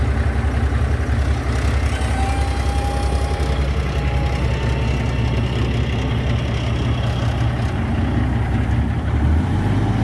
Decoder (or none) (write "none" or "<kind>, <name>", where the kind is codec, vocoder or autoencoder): none